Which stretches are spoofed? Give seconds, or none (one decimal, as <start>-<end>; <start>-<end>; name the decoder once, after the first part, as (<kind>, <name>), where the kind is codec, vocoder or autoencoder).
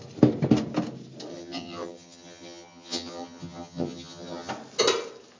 1.3-4.5 (vocoder, HiFi-GAN)